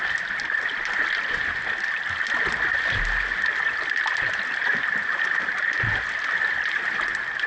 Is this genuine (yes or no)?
yes